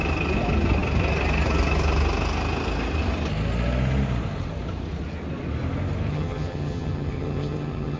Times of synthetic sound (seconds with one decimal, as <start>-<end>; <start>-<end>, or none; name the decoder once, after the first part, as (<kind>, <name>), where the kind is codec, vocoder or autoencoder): 6.1-8.0 (vocoder, HiFi-GAN)